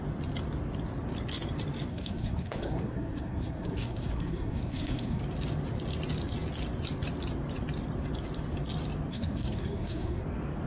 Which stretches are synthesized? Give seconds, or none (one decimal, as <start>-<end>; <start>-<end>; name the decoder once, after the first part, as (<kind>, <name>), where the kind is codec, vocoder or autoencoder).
1.9-5.2 (codec, SNAC); 9.1-10.2